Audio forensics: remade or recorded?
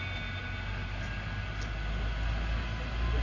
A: recorded